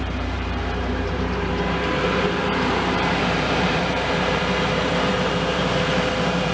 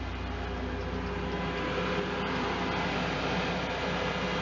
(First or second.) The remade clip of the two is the first